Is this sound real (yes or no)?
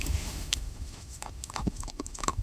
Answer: no